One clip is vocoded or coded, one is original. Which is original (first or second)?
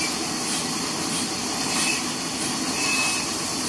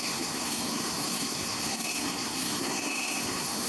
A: first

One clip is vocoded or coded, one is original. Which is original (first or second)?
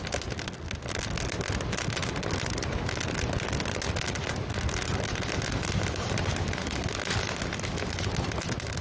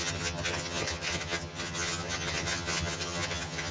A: first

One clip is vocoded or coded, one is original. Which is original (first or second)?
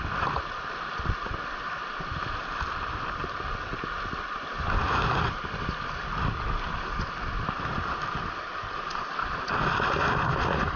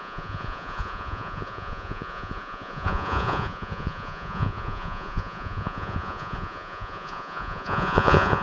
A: first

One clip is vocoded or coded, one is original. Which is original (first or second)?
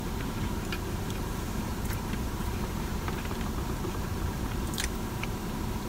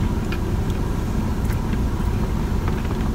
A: second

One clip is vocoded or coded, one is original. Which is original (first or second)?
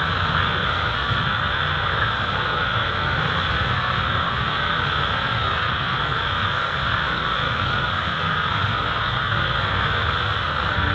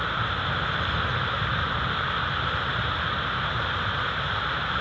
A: second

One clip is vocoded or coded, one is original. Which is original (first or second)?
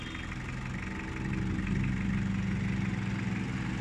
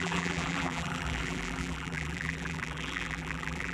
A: first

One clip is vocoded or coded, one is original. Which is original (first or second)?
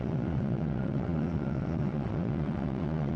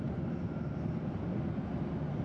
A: second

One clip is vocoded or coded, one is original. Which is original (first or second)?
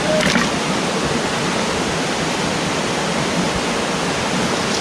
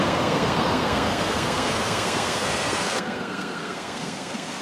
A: first